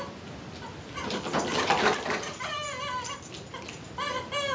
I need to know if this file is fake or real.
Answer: real